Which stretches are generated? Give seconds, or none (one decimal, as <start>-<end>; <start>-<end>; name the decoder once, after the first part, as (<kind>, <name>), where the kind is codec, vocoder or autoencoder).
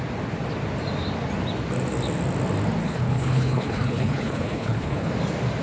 2.8-5.1 (codec, HILCodec)